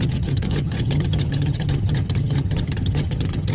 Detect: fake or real fake